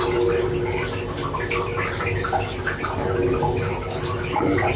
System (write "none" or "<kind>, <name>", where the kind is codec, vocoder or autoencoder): none